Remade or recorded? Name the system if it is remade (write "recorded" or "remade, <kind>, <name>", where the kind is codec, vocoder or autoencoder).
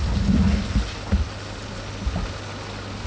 recorded